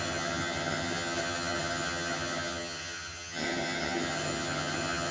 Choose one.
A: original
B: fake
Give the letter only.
B